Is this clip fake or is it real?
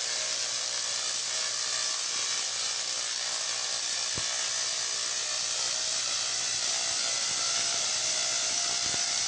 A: real